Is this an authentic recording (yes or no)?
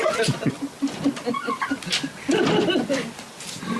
yes